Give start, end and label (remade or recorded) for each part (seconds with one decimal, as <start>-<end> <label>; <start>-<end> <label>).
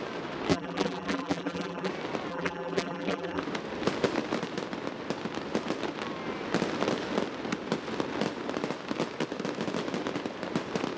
0.0-0.5 recorded; 0.5-1.9 remade; 1.9-2.3 recorded; 2.3-3.4 remade; 3.4-11.0 recorded